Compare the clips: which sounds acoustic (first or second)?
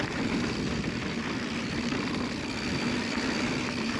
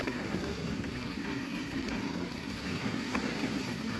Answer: first